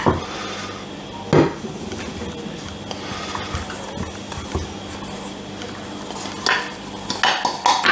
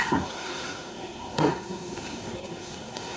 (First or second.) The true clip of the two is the first